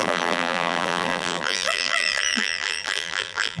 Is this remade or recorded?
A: remade